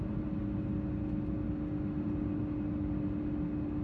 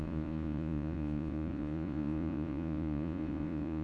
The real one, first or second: first